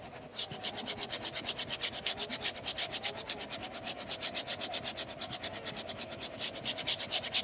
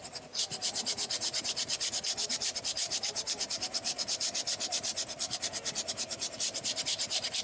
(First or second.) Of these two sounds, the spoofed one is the second